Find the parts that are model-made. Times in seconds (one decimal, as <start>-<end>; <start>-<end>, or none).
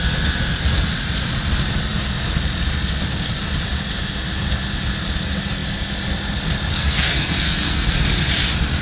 6.7-8.0